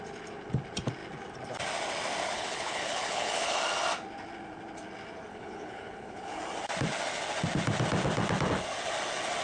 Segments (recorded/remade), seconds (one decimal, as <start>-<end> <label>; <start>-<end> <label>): 0.0-2.2 recorded; 2.2-3.6 remade; 3.6-5.3 recorded; 5.3-6.4 remade; 6.4-9.4 recorded

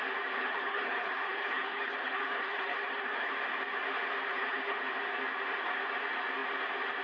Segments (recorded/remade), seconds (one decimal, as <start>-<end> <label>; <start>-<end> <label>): 0.0-0.4 recorded; 0.4-3.3 remade; 3.3-4.3 recorded; 4.3-4.8 remade; 4.8-7.0 recorded

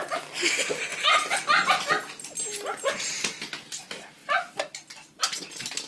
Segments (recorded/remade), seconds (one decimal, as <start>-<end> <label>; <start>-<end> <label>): 0.0-5.9 recorded

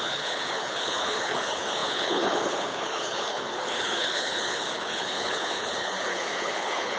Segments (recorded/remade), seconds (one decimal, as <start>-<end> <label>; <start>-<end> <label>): 0.0-7.0 remade

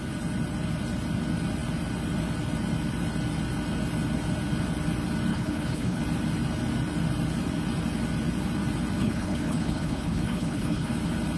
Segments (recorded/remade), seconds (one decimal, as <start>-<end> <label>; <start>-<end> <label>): 0.0-5.3 recorded; 5.3-6.0 remade; 6.0-9.0 recorded; 9.0-10.9 remade; 10.9-11.4 recorded

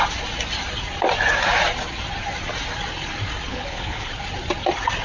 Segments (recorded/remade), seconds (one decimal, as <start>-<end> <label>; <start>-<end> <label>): 0.0-3.5 recorded; 3.5-4.1 remade; 4.1-5.0 recorded

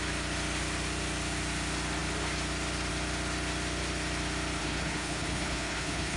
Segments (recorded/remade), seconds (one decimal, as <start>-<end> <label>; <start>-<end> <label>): 0.0-4.6 recorded; 4.6-6.2 remade

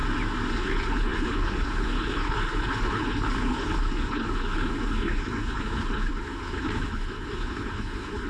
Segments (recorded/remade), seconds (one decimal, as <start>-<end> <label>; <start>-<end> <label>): 0.0-0.5 recorded; 0.5-8.3 remade